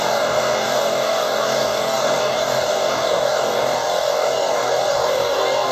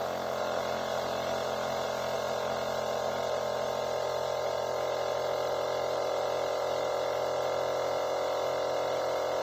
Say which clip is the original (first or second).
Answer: second